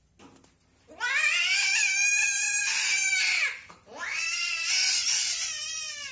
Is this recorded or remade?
recorded